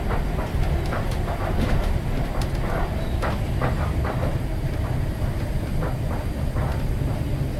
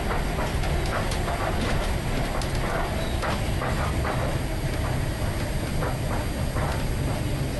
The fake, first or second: first